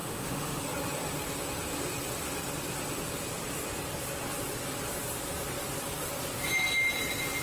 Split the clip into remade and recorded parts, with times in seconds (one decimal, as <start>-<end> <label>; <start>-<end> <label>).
0.0-0.6 remade; 0.6-7.4 recorded